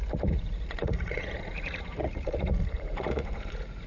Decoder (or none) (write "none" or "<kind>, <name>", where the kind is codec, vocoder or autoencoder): vocoder, Vocos